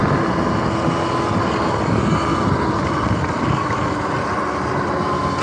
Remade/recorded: recorded